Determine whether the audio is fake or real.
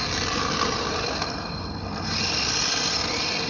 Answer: real